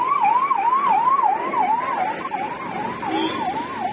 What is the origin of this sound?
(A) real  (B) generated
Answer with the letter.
A